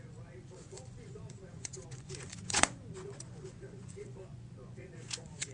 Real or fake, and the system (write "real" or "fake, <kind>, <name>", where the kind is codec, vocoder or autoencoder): fake, vocoder, Vocos